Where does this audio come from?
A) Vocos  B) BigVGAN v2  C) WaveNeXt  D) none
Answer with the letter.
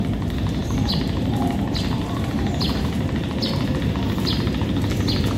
D